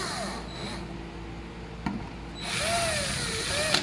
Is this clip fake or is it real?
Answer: real